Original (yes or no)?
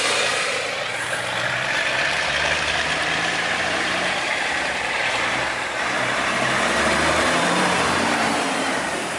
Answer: no